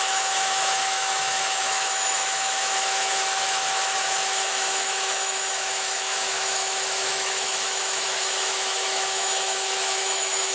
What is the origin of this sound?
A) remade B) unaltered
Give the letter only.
A